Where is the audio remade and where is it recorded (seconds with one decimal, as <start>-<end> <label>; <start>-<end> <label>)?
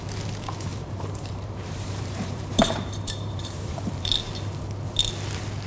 0.0-0.7 recorded; 0.7-4.1 remade; 4.1-5.7 recorded